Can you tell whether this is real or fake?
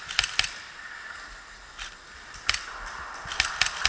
real